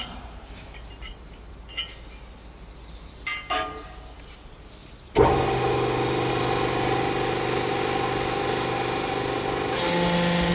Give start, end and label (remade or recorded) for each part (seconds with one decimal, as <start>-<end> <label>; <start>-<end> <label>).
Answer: 0.0-10.5 recorded

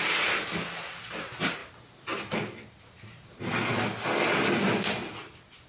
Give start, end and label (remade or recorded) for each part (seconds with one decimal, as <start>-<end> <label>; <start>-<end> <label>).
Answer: 0.0-5.7 recorded

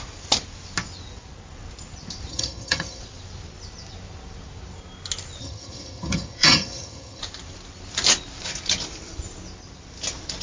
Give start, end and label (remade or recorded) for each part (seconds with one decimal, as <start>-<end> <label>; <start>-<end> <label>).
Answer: 0.0-2.3 recorded; 2.3-3.0 remade; 3.0-5.4 recorded; 5.4-7.2 remade; 7.2-10.4 recorded

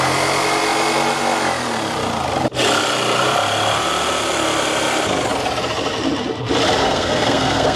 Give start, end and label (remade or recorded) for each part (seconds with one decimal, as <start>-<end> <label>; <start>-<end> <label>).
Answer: 0.0-6.8 recorded; 6.8-7.8 remade

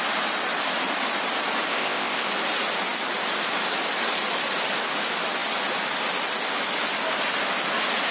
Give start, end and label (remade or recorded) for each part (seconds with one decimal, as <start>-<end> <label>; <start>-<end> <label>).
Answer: 0.0-1.7 recorded; 1.7-2.3 remade; 2.3-8.1 recorded

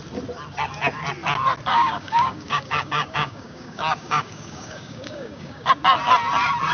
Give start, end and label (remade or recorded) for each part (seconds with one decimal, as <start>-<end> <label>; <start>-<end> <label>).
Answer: 0.0-1.7 recorded; 1.7-5.7 remade; 5.7-6.7 recorded

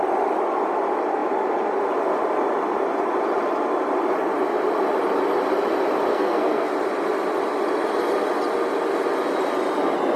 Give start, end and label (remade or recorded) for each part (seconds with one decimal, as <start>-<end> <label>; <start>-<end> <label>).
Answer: 0.0-6.1 recorded; 6.1-6.7 remade; 6.7-10.2 recorded

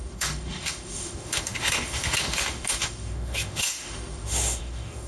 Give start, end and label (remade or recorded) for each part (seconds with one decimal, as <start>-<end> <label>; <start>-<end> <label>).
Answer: 0.0-5.1 remade